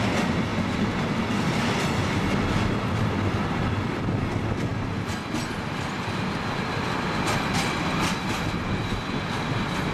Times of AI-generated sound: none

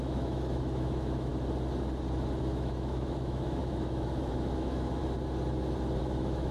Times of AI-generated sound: 0.0-1.3 (autoencoder, DAC-VAE); 2.4-5.0; 6.0-6.5

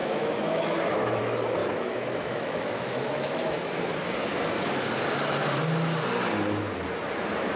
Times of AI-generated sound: 0.0-1.2 (autoencoder, DAC-VAE); 1.6-3.8

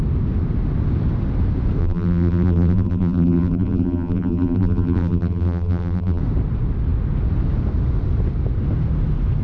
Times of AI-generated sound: 1.8-6.2 (vocoder, BigVGAN v2)

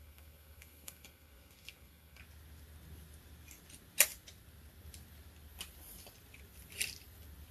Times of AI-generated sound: 0.0-2.2 (codec, SNAC)

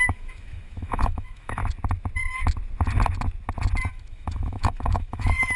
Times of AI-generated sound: 0.0-1.6 (autoencoder, DAC-VAE); 3.9-5.6

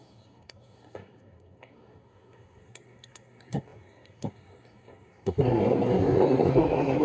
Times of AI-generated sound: 0.0-7.0 (codec, SNAC)

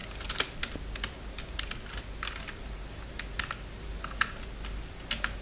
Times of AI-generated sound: none